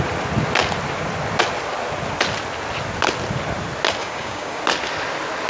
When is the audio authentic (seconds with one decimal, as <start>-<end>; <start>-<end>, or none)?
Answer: 0.0-4.0; 4.6-5.5